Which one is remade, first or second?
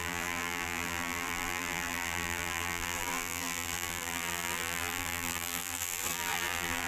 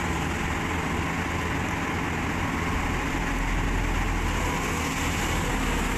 first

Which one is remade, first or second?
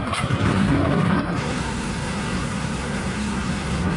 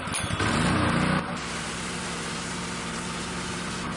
first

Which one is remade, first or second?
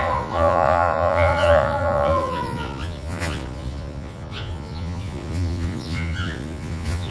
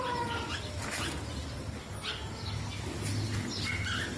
first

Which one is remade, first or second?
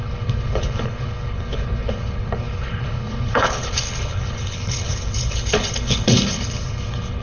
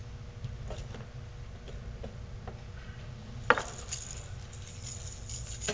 first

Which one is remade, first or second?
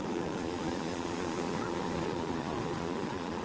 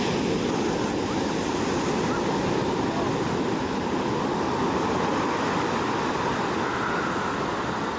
first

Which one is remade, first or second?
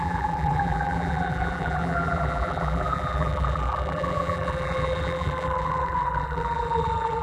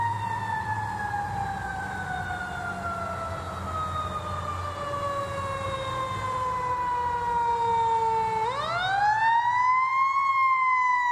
first